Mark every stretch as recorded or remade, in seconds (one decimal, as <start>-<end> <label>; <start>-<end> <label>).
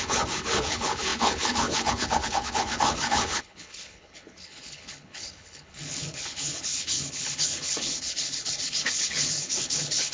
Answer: 0.0-10.1 remade